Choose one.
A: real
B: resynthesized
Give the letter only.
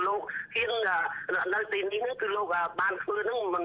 B